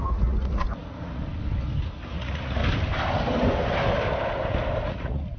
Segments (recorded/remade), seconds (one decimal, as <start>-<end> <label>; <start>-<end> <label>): 0.0-1.2 remade; 1.2-2.0 recorded; 2.0-2.6 remade; 2.6-4.9 recorded; 4.9-5.4 remade